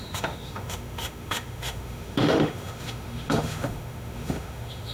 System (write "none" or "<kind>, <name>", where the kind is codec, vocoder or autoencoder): autoencoder, DAC-VAE